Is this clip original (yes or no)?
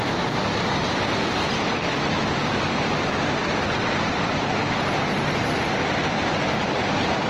yes